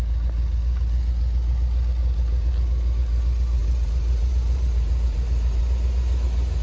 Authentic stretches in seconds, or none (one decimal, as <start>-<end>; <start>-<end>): 0.0-2.0; 2.5-3.6; 5.6-6.6